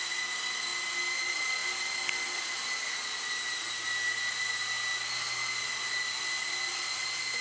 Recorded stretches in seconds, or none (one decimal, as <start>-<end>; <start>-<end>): 0.0-7.4